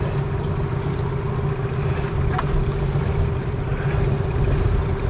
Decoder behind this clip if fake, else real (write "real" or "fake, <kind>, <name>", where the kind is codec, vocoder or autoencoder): real